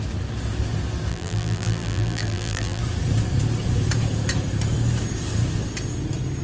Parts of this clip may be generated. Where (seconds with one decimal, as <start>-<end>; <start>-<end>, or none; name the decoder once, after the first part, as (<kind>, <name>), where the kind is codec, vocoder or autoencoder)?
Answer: 1.1-2.8 (vocoder, BigVGAN v2)